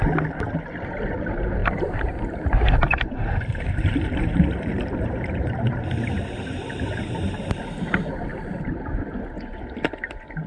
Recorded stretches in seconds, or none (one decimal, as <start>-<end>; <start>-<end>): 0.0-1.6; 6.0-8.3; 8.8-10.5